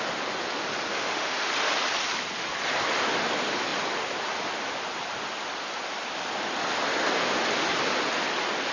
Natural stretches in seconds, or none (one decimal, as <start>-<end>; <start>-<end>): 0.0-0.9; 1.5-8.7